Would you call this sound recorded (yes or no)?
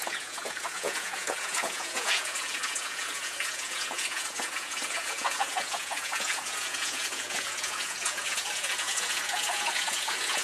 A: no